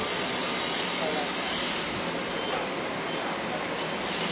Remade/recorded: recorded